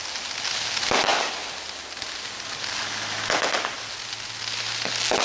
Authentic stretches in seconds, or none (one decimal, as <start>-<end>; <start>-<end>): 0.0-5.2